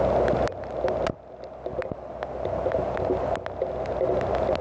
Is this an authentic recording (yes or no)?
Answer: yes